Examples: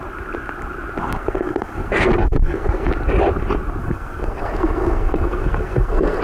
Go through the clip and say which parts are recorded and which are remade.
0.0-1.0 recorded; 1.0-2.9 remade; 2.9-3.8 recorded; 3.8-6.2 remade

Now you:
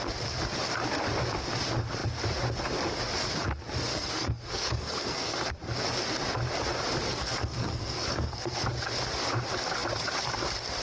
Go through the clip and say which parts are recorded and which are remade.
0.0-3.9 recorded; 3.9-5.5 remade; 5.5-7.1 recorded; 7.1-8.6 remade; 8.6-10.8 recorded